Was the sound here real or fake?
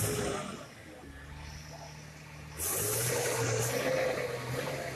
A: real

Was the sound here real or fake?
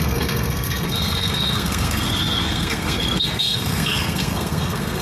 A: fake